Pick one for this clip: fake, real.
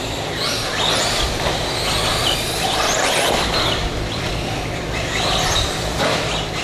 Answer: fake